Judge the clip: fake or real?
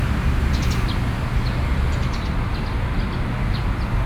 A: real